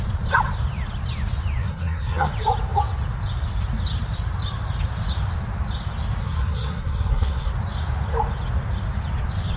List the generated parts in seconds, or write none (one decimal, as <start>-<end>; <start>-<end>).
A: 1.6-2.3; 6.2-7.5